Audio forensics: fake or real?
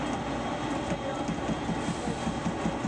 real